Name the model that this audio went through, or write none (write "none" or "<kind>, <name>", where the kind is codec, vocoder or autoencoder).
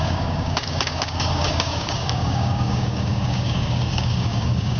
codec, DAC